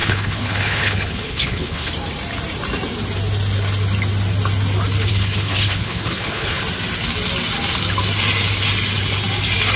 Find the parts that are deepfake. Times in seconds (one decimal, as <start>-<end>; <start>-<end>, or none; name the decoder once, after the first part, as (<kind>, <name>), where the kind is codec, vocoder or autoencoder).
0.0-1.9 (codec, HILCodec); 5.1-6.6